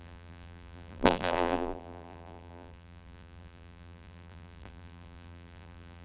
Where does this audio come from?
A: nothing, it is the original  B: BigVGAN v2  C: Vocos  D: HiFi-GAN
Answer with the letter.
B